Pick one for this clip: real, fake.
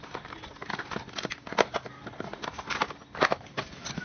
real